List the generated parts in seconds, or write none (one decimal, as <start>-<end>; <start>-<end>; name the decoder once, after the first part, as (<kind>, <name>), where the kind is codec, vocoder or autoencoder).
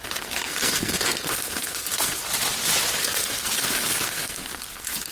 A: 0.0-2.2 (codec, SNAC); 3.0-5.1